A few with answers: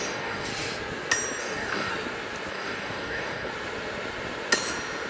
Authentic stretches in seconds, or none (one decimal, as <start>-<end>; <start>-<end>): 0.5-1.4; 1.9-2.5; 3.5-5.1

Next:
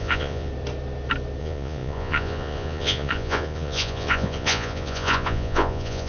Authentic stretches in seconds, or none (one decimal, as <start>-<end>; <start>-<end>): 0.5-1.4

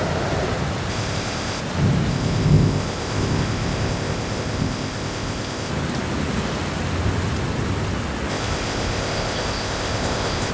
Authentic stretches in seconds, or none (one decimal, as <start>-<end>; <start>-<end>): 0.0-0.9; 1.6-2.1; 5.7-8.3

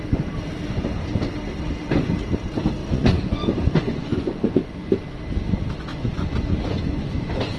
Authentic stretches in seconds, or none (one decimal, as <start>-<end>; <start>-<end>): 0.0-2.8; 4.9-5.9